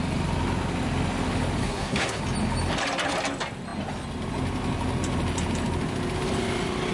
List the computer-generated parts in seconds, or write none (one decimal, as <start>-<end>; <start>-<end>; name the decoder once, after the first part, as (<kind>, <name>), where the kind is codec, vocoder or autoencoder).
1.6-2.2 (codec, SNAC)

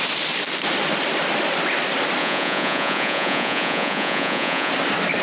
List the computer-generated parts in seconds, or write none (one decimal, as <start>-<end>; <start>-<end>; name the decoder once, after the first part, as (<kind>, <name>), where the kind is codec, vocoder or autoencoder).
2.2-4.7 (vocoder, Vocos)

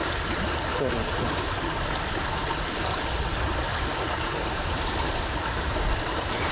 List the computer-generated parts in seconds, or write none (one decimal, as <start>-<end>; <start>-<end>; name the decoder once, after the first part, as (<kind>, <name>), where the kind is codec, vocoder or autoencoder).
4.4-6.5 (vocoder, BigVGAN v2)

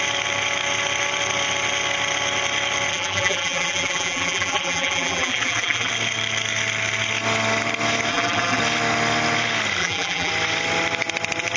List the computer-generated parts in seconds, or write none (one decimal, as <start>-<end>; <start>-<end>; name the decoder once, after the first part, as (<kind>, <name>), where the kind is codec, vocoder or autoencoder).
2.9-5.9 (vocoder, BigVGAN v2); 8.1-8.6; 9.8-10.3